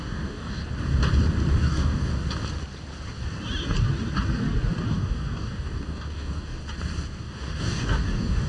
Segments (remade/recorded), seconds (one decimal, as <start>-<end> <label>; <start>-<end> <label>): 0.0-0.6 remade; 0.6-1.5 recorded; 1.5-2.1 remade; 2.1-4.9 recorded; 4.9-6.6 remade; 6.6-7.2 recorded; 7.2-8.5 remade